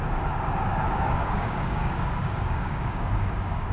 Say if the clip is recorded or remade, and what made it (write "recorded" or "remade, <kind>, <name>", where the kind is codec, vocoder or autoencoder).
remade, codec, DAC